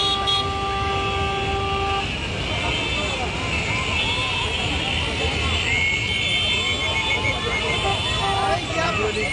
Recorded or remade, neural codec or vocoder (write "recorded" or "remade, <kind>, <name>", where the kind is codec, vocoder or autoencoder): recorded